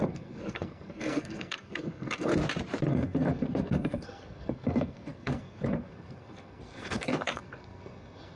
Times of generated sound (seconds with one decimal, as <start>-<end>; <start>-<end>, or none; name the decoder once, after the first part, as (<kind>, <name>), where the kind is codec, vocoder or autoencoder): 0.0-2.3 (codec, SNAC); 2.9-8.4